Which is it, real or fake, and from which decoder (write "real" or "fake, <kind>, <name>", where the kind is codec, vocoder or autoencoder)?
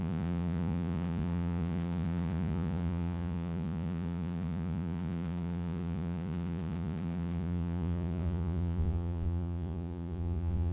fake, vocoder, Vocos